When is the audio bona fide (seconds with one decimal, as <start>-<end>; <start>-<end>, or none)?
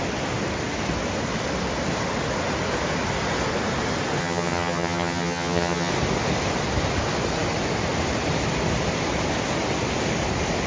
0.0-4.2; 5.9-10.7